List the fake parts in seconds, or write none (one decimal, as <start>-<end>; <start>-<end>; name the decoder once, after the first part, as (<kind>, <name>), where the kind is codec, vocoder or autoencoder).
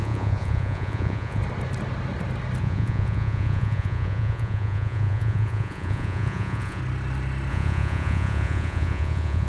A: 0.0-1.4 (vocoder, Vocos); 2.6-6.8; 7.5-9.5